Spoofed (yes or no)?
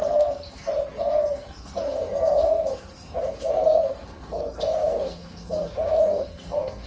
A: yes